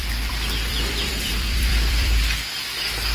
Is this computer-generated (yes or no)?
yes